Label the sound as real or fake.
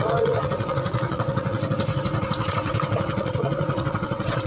fake